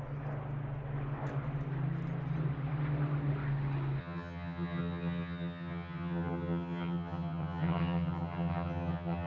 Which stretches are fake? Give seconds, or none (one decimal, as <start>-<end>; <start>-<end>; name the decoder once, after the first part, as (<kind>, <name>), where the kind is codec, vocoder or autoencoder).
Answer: 4.0-9.3 (vocoder, HiFi-GAN)